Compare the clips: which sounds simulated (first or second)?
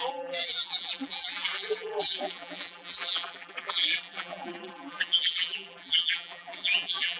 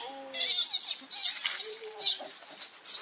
first